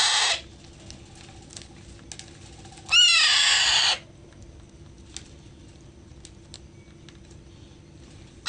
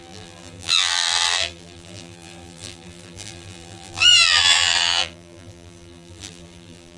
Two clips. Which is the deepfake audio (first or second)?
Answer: second